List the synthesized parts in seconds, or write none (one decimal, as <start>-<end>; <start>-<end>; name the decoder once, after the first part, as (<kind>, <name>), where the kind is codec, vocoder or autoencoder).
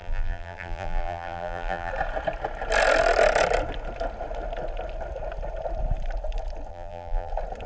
0.0-1.9 (vocoder, BigVGAN v2); 6.7-7.3